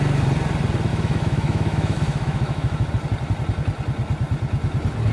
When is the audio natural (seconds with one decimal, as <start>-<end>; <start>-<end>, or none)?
0.0-0.9; 2.9-5.1